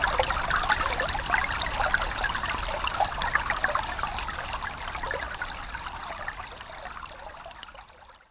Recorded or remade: recorded